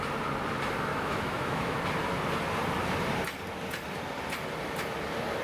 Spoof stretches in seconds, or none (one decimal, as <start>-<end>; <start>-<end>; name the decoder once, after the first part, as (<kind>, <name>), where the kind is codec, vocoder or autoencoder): 0.9-1.8 (autoencoder, DAC-VAE)